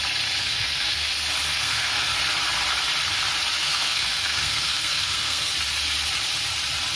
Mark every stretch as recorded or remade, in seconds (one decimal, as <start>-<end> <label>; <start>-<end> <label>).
0.0-0.4 recorded; 0.4-1.1 remade; 1.1-1.5 recorded; 1.5-2.0 remade; 2.0-3.6 recorded; 3.6-5.5 remade; 5.5-7.0 recorded